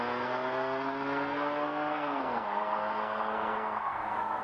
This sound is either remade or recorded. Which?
remade